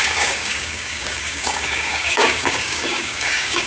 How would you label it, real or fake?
fake